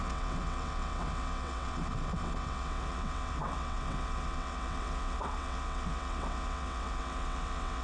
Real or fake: fake